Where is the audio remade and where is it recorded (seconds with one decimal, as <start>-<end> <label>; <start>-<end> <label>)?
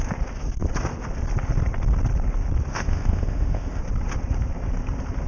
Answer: 0.0-2.7 recorded; 2.7-3.8 remade; 3.8-5.3 recorded